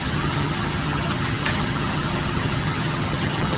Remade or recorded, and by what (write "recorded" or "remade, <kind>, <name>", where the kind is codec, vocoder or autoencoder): remade, vocoder, HiFi-GAN